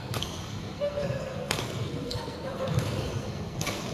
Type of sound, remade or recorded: remade